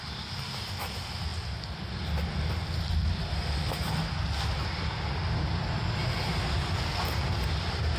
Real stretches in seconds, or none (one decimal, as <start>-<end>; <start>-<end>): 0.0-6.0; 6.7-8.0